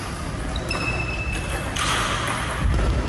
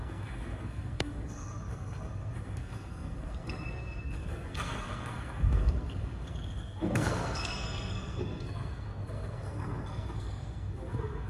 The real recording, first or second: first